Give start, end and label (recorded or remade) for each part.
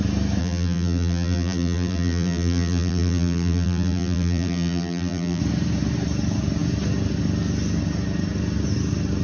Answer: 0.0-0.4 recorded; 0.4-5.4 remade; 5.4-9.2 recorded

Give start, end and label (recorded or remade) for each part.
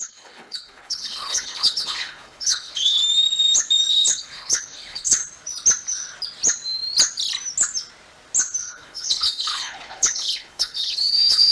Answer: 0.0-3.0 remade; 3.0-3.9 recorded; 3.9-5.2 remade; 5.2-8.6 recorded; 8.6-11.5 remade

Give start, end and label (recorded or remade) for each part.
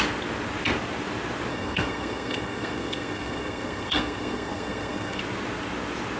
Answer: 0.0-1.5 recorded; 1.5-5.2 remade; 5.2-6.2 recorded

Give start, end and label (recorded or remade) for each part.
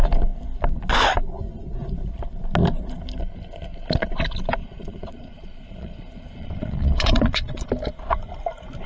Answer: 0.0-4.6 recorded; 4.6-7.7 remade; 7.7-8.9 recorded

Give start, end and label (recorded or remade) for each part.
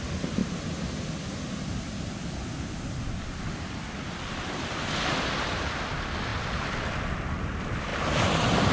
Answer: 0.0-8.7 recorded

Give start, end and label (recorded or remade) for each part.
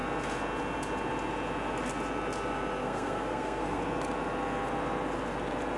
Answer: 0.0-2.8 recorded; 2.8-3.8 remade; 3.8-5.8 recorded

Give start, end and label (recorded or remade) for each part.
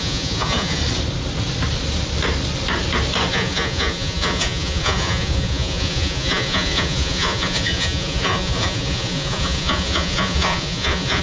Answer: 0.0-0.8 remade; 0.8-3.3 recorded; 3.3-11.2 remade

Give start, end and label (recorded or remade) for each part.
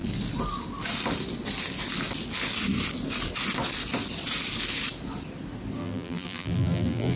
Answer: 0.0-5.8 recorded; 5.8-7.2 remade